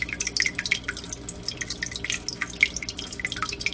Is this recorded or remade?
recorded